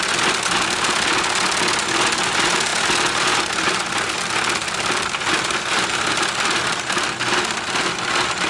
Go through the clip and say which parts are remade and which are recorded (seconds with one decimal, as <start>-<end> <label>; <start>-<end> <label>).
0.0-8.5 recorded